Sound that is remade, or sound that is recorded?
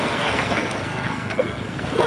remade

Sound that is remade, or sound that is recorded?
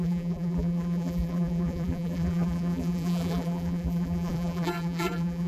remade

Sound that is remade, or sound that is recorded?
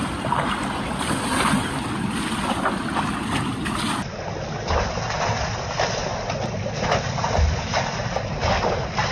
recorded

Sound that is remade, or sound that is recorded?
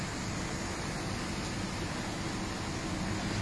recorded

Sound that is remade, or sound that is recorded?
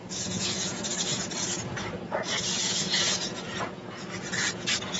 remade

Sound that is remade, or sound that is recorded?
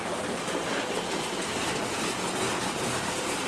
recorded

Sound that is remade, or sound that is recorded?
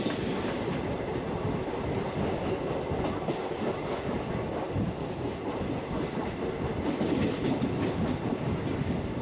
recorded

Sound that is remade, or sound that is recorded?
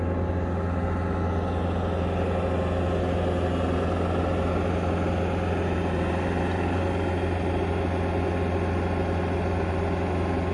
recorded